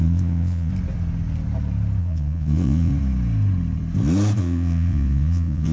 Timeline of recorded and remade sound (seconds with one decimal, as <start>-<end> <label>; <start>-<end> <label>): 0.0-0.7 remade; 0.7-2.0 recorded; 2.0-2.9 remade; 2.9-4.4 recorded; 4.4-5.7 remade